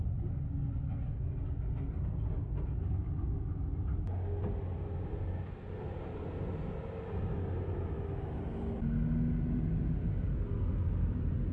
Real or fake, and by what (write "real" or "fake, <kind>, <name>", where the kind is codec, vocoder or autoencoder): real